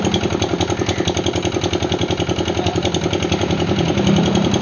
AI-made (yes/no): no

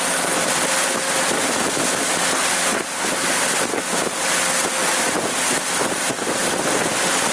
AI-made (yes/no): no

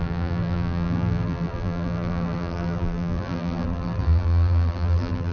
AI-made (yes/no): yes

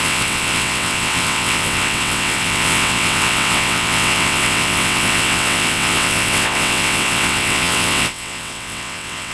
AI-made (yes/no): yes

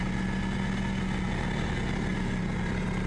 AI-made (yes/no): no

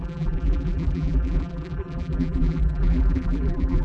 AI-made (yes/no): yes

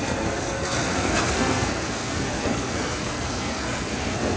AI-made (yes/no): yes